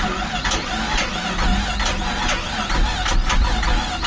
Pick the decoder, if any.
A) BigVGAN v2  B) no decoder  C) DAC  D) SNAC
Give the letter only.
B